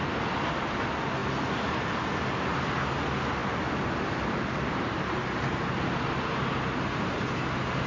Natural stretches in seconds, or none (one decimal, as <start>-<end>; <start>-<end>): 0.0-7.9